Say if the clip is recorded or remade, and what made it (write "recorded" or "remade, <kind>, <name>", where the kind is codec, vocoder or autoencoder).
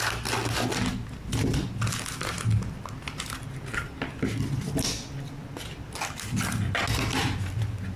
recorded